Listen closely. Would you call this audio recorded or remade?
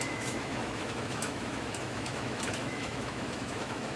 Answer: remade